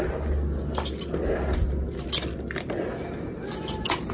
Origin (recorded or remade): recorded